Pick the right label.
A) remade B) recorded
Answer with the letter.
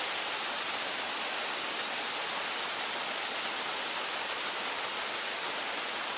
B